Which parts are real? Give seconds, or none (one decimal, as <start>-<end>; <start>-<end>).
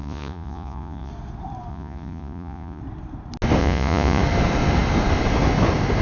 1.1-1.7; 2.8-3.6; 4.2-6.0